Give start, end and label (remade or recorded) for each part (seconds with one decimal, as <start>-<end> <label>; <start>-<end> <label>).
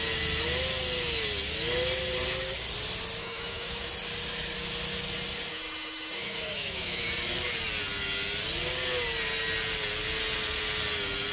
0.0-3.2 recorded; 3.2-3.9 remade; 3.9-5.5 recorded; 5.5-7.1 remade; 7.1-11.3 recorded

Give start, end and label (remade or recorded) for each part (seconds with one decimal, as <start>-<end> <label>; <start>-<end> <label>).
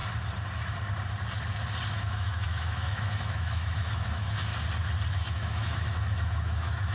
0.0-1.9 recorded; 1.9-4.5 remade; 4.5-5.1 recorded; 5.1-6.9 remade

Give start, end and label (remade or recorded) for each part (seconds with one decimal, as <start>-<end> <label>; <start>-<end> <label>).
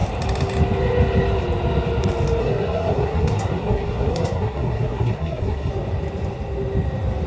0.0-2.4 recorded; 2.4-5.7 remade; 5.7-7.3 recorded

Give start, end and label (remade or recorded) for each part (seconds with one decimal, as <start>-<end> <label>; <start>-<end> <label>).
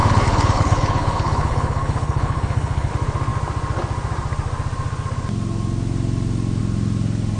0.0-2.9 remade; 2.9-7.4 recorded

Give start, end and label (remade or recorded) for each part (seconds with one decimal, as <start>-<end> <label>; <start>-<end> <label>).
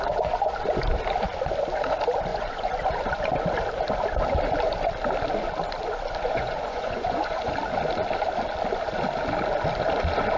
0.0-2.3 recorded; 2.3-2.8 remade; 2.8-6.2 recorded; 6.2-7.5 remade; 7.5-10.4 recorded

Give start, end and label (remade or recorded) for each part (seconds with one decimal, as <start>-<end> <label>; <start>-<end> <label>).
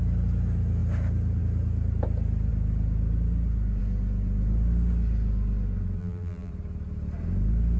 0.0-6.0 recorded; 6.0-6.5 remade; 6.5-7.8 recorded